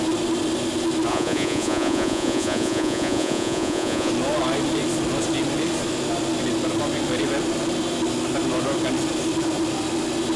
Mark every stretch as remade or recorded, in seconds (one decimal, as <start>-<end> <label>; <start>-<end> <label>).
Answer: 0.0-1.1 recorded; 1.1-4.1 remade; 4.1-10.4 recorded